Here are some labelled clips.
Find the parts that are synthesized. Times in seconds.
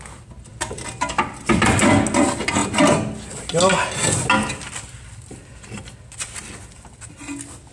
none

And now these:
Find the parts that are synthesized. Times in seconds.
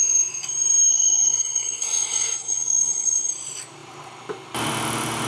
0.9-3.3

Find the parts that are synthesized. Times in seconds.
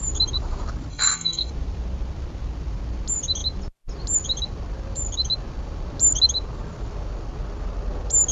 0.9-1.5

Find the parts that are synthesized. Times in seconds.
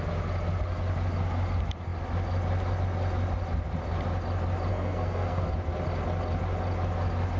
4.7-5.5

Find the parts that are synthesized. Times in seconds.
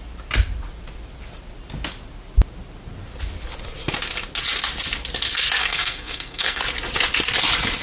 5.6-6.6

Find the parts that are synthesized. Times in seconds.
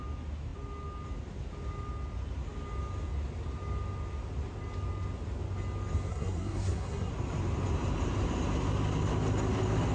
6.1-7.1